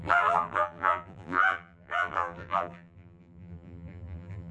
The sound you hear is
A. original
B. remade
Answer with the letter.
B